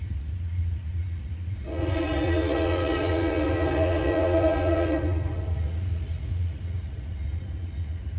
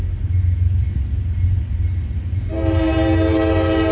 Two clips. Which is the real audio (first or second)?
second